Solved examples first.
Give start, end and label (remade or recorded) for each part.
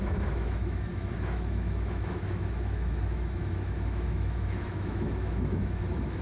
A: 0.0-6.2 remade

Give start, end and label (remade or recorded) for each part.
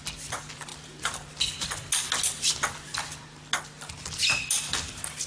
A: 0.0-5.3 recorded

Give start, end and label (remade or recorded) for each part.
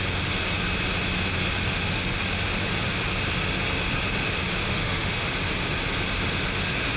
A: 0.0-1.7 recorded; 1.7-2.2 remade; 2.2-4.7 recorded; 4.7-5.3 remade; 5.3-7.0 recorded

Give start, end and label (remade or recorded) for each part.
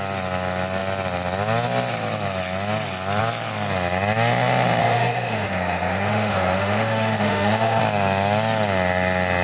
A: 0.0-4.8 recorded; 4.8-7.8 remade; 7.8-9.4 recorded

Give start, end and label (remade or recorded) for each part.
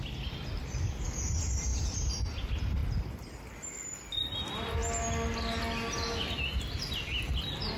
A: 0.0-7.8 recorded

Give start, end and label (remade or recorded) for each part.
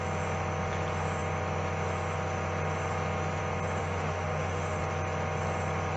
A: 0.0-3.8 recorded; 3.8-4.8 remade; 4.8-6.0 recorded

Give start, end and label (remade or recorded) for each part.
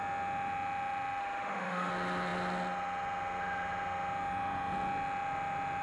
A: 0.0-1.2 recorded; 1.2-1.9 remade; 1.9-5.8 recorded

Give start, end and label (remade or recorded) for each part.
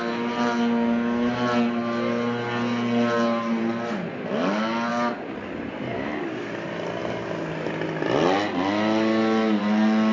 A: 0.0-10.1 recorded